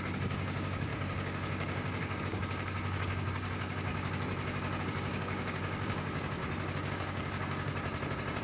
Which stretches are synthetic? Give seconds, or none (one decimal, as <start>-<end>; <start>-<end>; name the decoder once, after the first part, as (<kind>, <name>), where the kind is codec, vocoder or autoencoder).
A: 0.0-3.9 (codec, DAC); 4.8-6.4; 6.9-7.7